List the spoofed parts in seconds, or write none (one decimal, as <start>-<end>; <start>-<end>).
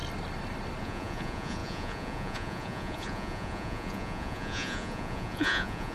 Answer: 0.8-5.9